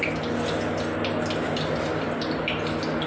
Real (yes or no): yes